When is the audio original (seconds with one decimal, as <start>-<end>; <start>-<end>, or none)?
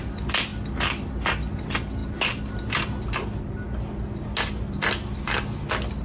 0.0-6.0